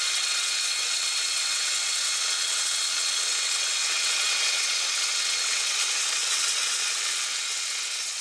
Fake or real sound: fake